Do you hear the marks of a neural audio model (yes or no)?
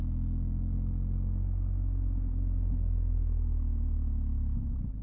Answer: no